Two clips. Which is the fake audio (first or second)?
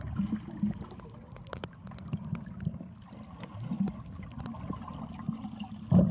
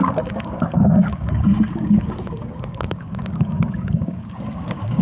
second